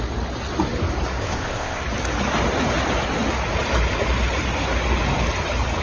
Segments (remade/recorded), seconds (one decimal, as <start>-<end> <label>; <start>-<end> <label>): 0.0-1.2 recorded; 1.2-1.8 remade; 1.8-5.8 recorded